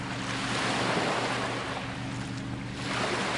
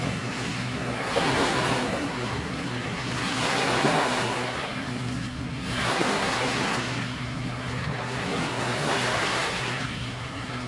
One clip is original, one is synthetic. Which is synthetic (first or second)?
second